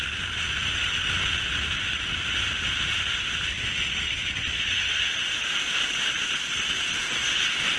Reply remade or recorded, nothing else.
recorded